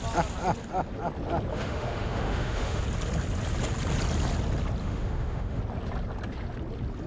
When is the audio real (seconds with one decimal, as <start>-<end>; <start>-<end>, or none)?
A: 0.0-1.5; 2.8-4.8; 5.6-7.1

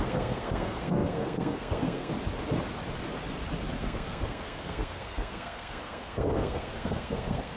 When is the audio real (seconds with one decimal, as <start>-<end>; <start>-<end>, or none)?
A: 2.1-3.8

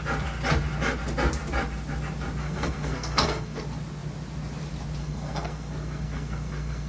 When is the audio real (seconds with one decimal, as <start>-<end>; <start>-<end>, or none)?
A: 0.0-2.4; 3.6-5.0

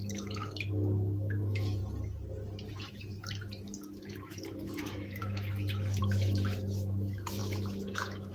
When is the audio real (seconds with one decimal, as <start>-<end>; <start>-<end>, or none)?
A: 1.8-2.7

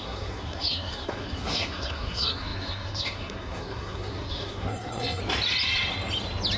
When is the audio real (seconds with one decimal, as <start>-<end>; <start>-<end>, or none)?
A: 5.2-6.6

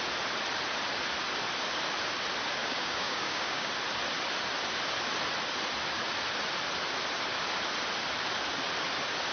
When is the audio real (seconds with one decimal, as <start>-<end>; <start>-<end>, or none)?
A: 0.0-2.6; 3.7-9.3

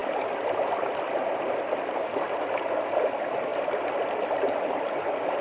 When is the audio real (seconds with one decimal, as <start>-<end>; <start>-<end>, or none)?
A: 0.0-5.4